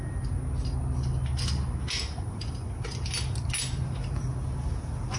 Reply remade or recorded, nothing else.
recorded